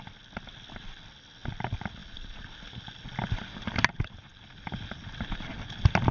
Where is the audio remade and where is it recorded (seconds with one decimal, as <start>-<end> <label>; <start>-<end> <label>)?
0.0-2.0 recorded; 2.0-2.9 remade; 2.9-6.1 recorded